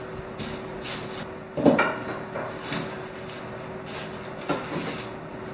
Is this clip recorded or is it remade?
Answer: recorded